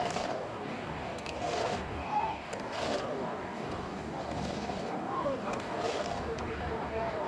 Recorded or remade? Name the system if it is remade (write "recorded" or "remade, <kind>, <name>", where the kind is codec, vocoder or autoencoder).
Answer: remade, codec, DAC